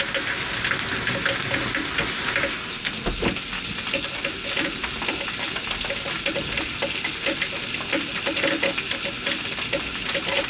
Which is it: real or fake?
real